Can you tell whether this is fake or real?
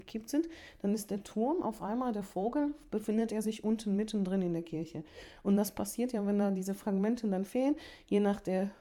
fake